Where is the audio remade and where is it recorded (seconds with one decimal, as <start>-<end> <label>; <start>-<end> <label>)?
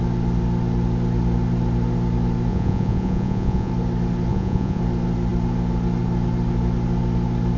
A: 0.0-2.5 recorded; 2.5-3.7 remade; 3.7-4.3 recorded; 4.3-4.8 remade; 4.8-7.6 recorded